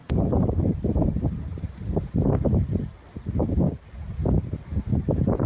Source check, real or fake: real